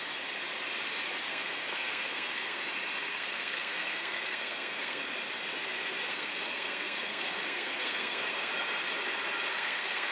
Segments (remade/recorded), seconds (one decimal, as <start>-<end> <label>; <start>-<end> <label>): 0.0-1.3 recorded; 1.3-2.6 remade; 2.6-3.1 recorded; 3.1-5.0 remade; 5.0-6.1 recorded; 6.1-8.5 remade; 8.5-9.5 recorded; 9.5-10.1 remade